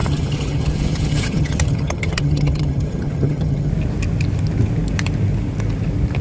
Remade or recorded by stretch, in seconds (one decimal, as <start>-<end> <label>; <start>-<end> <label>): 0.0-3.7 remade; 3.7-6.2 recorded